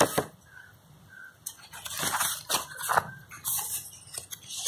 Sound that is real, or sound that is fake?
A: real